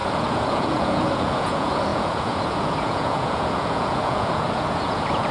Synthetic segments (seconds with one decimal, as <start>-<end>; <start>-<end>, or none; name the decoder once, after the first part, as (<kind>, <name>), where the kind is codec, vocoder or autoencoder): 0.0-5.3 (vocoder, Vocos)

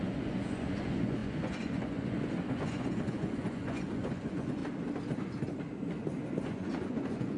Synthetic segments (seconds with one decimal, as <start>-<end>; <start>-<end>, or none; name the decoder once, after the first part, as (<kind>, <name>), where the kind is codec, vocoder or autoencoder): 0.0-4.6 (vocoder, Vocos); 6.4-7.4

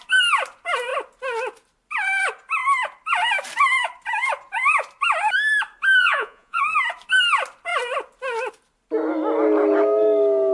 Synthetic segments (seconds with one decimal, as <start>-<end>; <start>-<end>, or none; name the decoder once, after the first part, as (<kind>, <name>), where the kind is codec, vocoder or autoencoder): 6.0-6.6 (vocoder, Vocos)

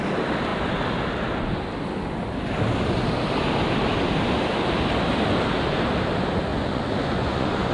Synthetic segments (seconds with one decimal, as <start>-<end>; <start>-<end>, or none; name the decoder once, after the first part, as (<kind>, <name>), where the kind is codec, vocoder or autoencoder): 6.5-7.7 (vocoder, Vocos)

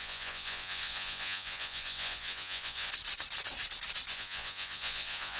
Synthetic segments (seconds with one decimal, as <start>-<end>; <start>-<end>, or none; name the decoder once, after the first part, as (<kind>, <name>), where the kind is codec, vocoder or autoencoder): 0.0-2.9 (vocoder, Vocos); 4.1-5.4

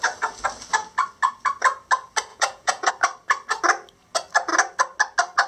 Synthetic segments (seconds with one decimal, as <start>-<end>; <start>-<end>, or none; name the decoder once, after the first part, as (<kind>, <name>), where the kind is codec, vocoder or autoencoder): 2.3-2.9 (vocoder, Vocos)

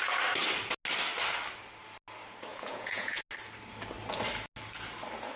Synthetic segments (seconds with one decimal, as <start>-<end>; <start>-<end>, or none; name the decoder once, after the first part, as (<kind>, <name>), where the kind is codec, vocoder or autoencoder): 2.5-3.2 (vocoder, Vocos)

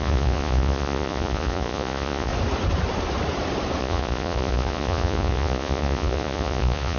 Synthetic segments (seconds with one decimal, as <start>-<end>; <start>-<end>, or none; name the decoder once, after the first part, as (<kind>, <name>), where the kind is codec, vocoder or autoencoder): 0.0-2.3 (vocoder, Vocos); 3.8-7.0